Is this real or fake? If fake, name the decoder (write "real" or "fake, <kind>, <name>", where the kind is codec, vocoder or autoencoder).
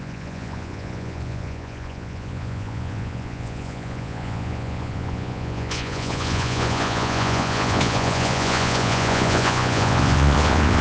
fake, vocoder, Vocos